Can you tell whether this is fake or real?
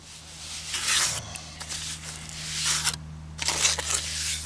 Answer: real